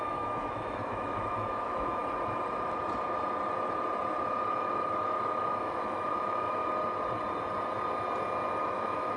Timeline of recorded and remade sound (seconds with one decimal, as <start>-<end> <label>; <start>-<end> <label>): 0.0-2.0 remade; 2.0-4.5 recorded; 4.5-6.6 remade; 6.6-8.6 recorded; 8.6-9.2 remade